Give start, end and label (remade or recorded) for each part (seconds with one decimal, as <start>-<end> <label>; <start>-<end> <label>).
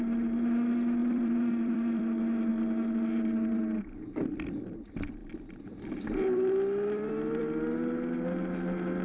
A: 0.0-1.0 recorded; 1.0-2.0 remade; 2.0-5.2 recorded; 5.2-7.4 remade; 7.4-9.0 recorded